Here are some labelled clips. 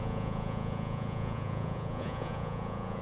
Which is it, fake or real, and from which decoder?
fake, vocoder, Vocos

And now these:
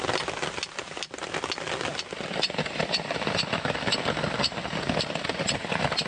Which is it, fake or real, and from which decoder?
real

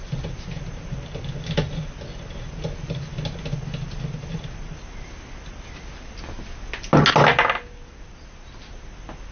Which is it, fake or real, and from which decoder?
real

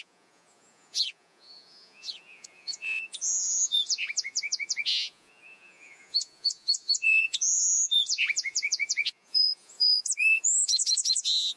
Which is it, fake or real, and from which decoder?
fake, vocoder, Vocos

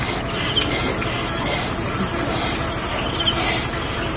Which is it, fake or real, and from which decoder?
real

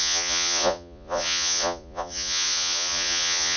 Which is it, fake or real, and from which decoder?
fake, vocoder, Vocos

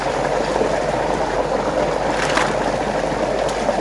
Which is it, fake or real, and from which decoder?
real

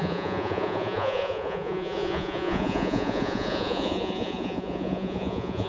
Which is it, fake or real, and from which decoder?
fake, vocoder, Vocos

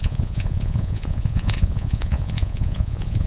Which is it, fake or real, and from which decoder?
fake, vocoder, Vocos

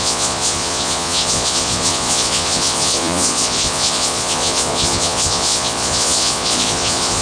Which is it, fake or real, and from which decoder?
fake, vocoder, Vocos